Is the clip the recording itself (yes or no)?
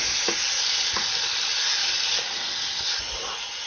yes